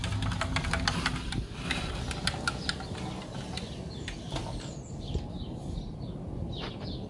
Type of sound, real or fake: real